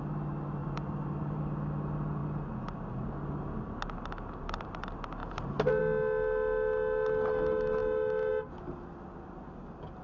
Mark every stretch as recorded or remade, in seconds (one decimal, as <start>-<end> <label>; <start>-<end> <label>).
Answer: 0.0-0.6 recorded; 0.6-1.4 remade; 1.4-5.2 recorded; 5.2-5.8 remade; 5.8-10.0 recorded

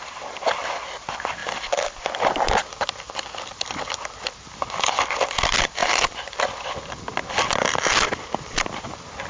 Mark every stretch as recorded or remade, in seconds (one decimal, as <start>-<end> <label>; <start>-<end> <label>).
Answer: 0.0-1.4 recorded; 1.4-3.5 remade; 3.5-5.8 recorded; 5.8-6.7 remade; 6.7-9.3 recorded

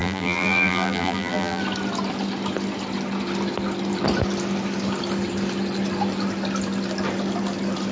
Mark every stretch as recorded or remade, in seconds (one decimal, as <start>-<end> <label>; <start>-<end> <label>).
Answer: 0.0-1.6 remade; 1.6-7.9 recorded